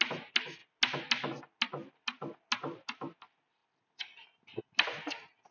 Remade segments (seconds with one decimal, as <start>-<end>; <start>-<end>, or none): none